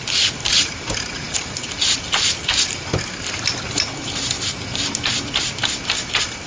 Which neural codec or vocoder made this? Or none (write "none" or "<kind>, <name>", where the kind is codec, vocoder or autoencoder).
vocoder, BigVGAN v2